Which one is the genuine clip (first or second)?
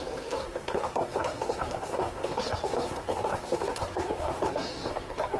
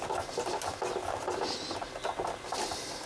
second